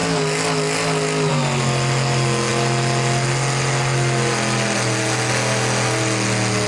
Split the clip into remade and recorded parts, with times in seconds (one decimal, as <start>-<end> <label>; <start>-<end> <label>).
0.0-6.7 recorded